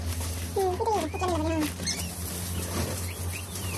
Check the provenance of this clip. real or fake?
real